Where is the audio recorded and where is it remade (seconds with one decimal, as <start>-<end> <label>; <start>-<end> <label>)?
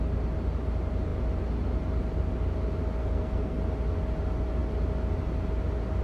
0.0-3.0 recorded; 3.0-3.6 remade; 3.6-6.0 recorded